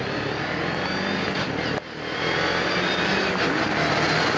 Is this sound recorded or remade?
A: recorded